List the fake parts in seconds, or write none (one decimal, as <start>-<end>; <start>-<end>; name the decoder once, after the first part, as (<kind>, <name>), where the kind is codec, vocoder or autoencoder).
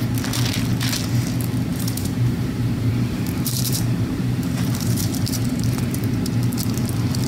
1.7-6.1 (vocoder, BigVGAN v2)